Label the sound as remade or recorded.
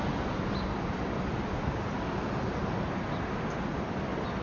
recorded